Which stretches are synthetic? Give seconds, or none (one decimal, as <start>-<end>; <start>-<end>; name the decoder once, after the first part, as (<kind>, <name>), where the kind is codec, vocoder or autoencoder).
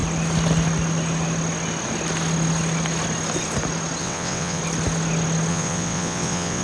4.0-4.6 (vocoder, WaveNeXt); 5.5-6.6